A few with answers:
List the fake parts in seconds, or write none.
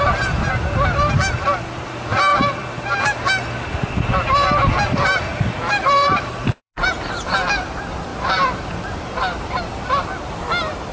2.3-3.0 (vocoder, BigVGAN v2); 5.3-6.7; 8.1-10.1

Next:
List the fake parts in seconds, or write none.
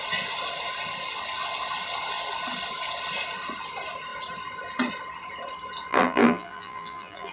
5.9-7.3 (vocoder, BigVGAN v2)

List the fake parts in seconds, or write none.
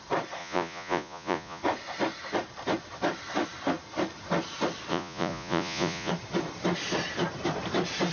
0.4-1.6 (vocoder, Vocos); 4.9-6.1